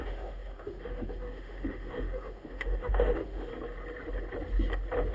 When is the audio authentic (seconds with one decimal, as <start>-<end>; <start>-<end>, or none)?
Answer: 3.5-5.1